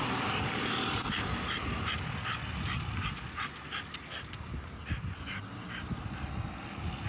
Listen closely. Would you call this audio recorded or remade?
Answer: recorded